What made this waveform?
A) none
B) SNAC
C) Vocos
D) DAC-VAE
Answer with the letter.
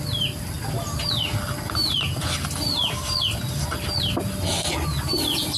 A